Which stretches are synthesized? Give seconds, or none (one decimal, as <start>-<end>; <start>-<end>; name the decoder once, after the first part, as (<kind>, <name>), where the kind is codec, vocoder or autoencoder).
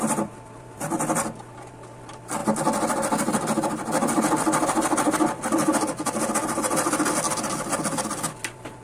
none